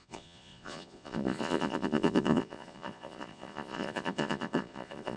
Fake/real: fake